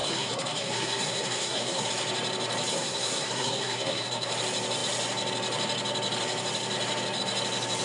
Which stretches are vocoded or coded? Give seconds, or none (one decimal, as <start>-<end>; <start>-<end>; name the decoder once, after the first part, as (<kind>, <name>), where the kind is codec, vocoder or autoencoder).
0.0-1.9 (codec, SNAC); 2.7-4.3